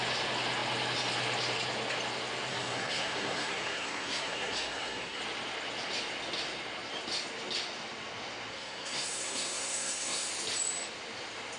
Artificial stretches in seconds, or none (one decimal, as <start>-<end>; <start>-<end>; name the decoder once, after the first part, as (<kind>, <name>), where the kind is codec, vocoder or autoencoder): 2.5-5.2 (codec, SNAC); 8.5-10.3